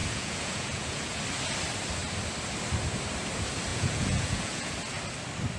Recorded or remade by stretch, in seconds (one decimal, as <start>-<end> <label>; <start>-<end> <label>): 0.0-1.2 remade; 1.2-3.7 recorded; 3.7-4.7 remade; 4.7-5.6 recorded

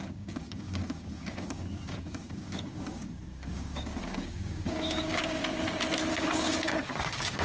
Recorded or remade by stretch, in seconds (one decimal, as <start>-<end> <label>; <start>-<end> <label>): 0.0-5.4 remade; 5.4-6.1 recorded; 6.1-7.4 remade

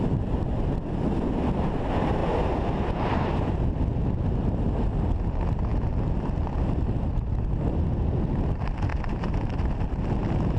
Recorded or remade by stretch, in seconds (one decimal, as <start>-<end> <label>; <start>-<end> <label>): 0.0-10.6 recorded

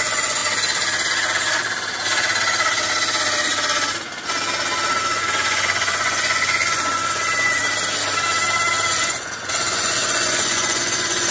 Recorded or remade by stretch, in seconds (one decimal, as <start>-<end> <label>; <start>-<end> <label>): 0.0-0.4 remade; 0.4-5.0 recorded; 5.0-7.6 remade; 7.6-8.9 recorded; 8.9-11.3 remade